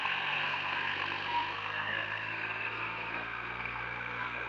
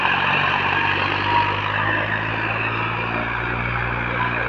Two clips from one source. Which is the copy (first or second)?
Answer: first